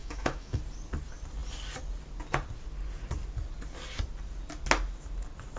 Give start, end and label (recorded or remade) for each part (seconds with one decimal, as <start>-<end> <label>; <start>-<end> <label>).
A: 0.0-0.6 remade; 0.6-5.6 recorded